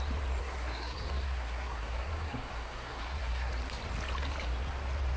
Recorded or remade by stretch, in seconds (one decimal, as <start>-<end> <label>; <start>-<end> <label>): 0.0-0.4 recorded; 0.4-3.5 remade; 3.5-5.2 recorded